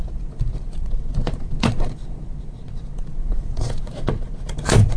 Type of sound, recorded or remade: remade